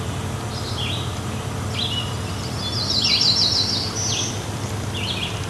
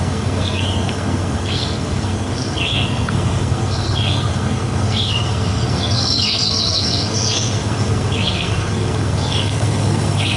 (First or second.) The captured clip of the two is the first